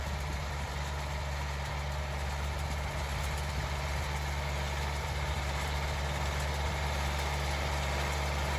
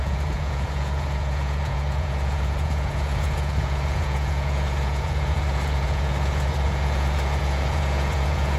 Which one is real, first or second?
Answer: first